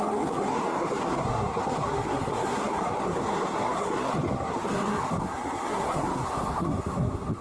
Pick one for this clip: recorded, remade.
remade